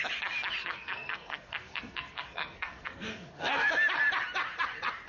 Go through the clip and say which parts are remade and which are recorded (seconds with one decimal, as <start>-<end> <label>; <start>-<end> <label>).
0.0-0.6 recorded; 0.6-3.7 remade; 3.7-5.1 recorded